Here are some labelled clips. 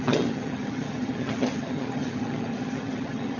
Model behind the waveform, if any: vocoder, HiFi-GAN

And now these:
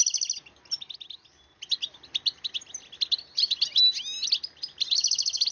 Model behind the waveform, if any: none